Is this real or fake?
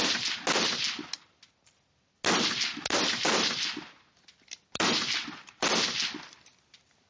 real